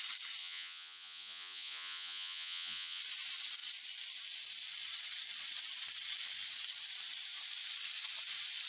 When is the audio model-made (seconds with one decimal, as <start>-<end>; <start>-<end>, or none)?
0.4-3.0